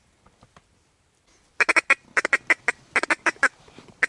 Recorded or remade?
recorded